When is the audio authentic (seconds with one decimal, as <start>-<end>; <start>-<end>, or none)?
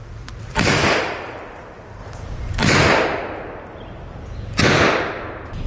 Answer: 0.0-0.8; 1.6-5.7